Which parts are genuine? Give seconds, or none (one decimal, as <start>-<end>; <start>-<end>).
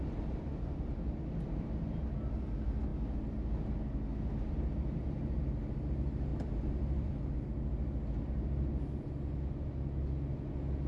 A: 0.0-10.9